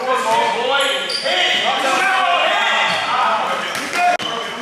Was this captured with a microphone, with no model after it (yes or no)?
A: yes